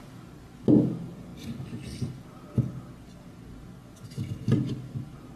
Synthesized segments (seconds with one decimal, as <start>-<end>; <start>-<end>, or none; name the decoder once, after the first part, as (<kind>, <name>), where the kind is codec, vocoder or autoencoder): 1.3-2.0 (vocoder, BigVGAN v2); 3.8-5.4